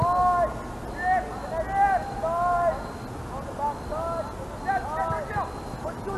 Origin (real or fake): real